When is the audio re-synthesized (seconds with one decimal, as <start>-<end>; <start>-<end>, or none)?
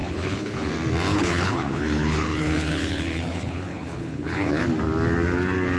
0.0-0.7; 1.1-4.6